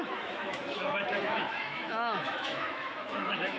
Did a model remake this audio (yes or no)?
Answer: yes